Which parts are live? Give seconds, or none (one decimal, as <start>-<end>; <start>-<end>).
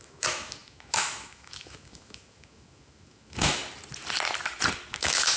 3.6-4.9